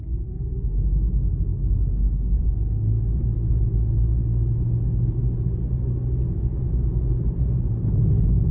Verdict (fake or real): real